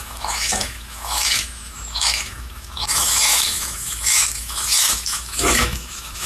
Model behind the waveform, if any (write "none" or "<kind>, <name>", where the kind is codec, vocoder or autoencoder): autoencoder, DAC-VAE